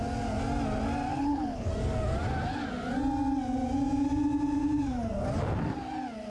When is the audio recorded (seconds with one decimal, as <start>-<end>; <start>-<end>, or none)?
0.0-1.1; 1.7-6.3